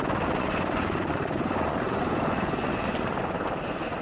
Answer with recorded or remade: remade